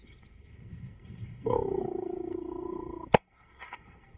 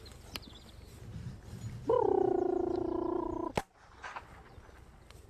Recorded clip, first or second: second